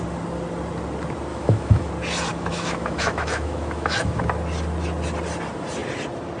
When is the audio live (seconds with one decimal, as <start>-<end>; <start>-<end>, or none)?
0.0-1.3; 1.9-2.3; 4.2-6.4